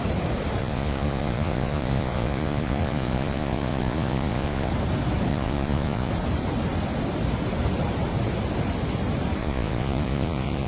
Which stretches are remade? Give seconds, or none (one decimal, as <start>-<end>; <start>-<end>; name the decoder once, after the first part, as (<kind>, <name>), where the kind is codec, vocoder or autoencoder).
0.6-4.7 (vocoder, Vocos); 5.3-6.1; 9.4-10.7